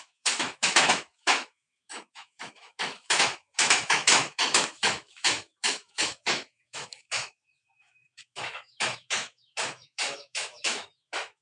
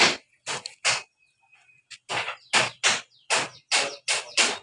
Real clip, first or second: second